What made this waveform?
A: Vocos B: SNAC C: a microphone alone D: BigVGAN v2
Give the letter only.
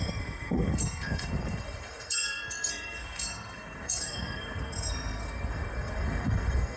B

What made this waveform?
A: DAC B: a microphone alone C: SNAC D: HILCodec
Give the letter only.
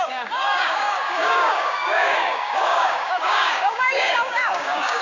A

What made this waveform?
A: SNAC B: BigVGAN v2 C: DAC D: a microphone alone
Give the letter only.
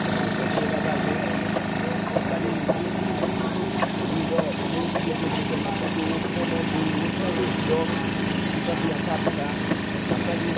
D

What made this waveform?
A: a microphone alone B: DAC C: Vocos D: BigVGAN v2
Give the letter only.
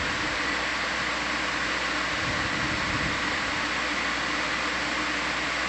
A